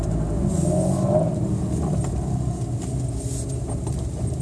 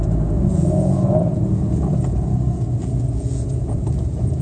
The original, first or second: first